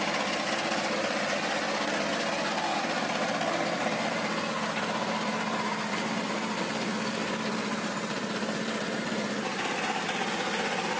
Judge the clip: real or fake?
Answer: real